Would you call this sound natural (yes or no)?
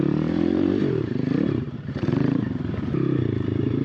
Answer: no